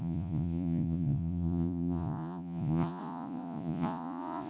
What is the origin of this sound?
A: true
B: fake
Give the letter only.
B